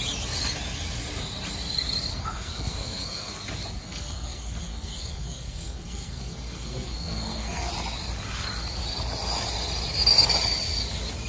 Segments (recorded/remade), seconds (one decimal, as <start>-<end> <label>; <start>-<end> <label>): 0.0-2.1 recorded; 2.1-3.4 remade; 3.4-3.8 recorded; 3.8-7.7 remade; 7.7-11.3 recorded